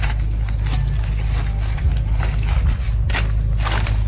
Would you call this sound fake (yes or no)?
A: no